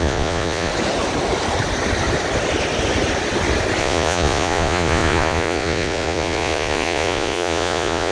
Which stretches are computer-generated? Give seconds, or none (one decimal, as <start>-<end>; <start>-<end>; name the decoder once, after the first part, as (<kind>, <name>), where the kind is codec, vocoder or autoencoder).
0.0-0.7 (vocoder, Vocos); 3.8-8.1